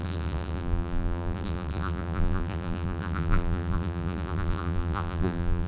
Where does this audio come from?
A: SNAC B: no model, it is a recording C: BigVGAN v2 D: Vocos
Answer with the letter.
C